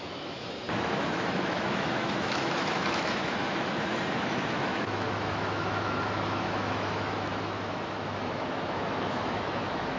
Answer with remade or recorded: remade